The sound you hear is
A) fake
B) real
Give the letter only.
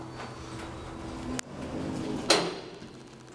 B